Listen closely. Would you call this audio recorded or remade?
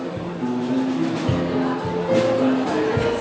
recorded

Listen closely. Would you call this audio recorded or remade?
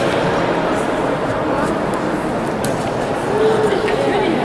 recorded